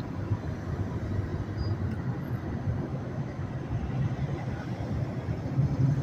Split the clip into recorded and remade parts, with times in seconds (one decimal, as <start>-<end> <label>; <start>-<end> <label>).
0.0-2.9 recorded; 2.9-3.5 remade; 3.5-6.0 recorded